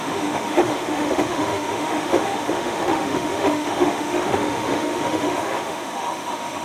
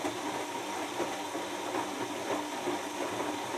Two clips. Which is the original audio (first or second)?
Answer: second